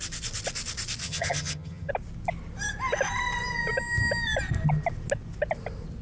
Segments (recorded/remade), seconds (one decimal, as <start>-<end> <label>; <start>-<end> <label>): 0.0-1.0 recorded; 1.0-1.9 remade; 1.9-6.0 recorded